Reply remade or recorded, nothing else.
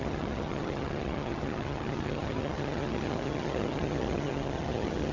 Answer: remade